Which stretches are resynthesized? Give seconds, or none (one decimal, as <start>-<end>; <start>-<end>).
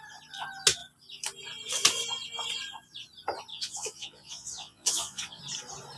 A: 3.5-5.4